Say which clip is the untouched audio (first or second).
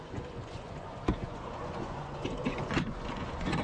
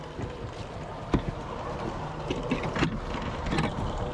second